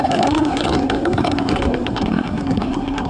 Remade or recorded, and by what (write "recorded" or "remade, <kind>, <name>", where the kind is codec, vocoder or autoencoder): remade, codec, SNAC